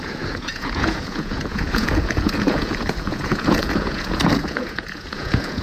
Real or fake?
fake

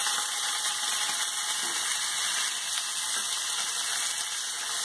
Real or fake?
real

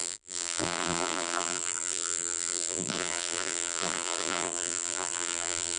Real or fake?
fake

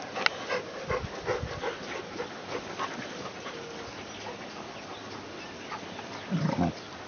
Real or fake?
real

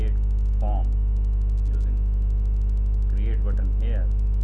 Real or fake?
real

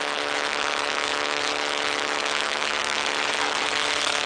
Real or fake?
fake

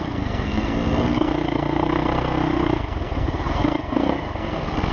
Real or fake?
fake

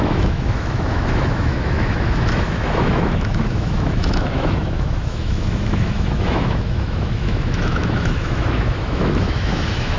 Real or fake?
fake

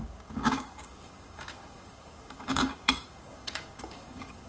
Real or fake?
fake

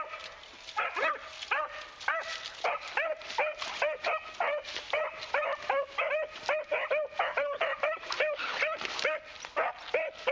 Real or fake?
real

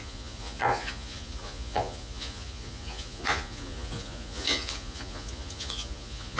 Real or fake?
fake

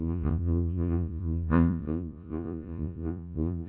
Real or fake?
fake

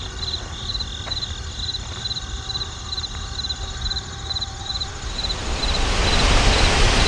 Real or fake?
fake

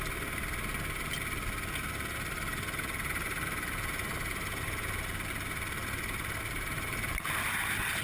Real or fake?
real